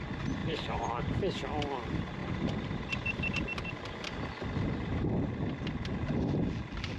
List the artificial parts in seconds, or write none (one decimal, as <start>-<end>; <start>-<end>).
0.4-1.2; 2.2-3.4